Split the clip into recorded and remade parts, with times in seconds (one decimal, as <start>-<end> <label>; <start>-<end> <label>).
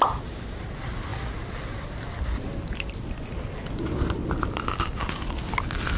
0.0-6.0 recorded